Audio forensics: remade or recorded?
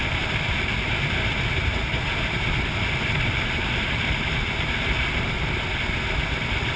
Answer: recorded